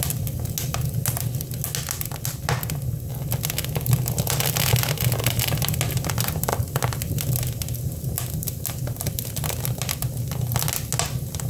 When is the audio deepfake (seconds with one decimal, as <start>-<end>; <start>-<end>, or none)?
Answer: none